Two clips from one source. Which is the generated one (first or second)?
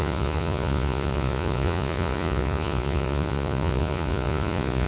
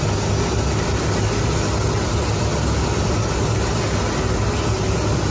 first